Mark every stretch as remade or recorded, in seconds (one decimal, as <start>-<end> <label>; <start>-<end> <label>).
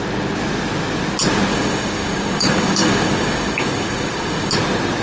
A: 0.0-1.5 recorded; 1.5-4.5 remade; 4.5-5.0 recorded